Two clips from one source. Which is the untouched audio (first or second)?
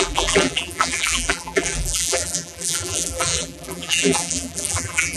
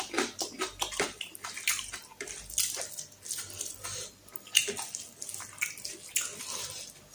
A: second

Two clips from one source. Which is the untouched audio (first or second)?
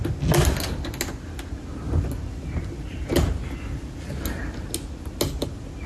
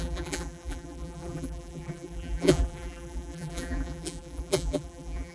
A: first